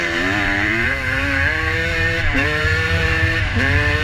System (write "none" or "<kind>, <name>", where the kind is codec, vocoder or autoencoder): vocoder, BigVGAN v2